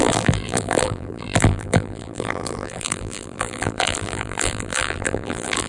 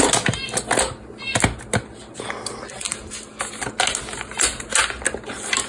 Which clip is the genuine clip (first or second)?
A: second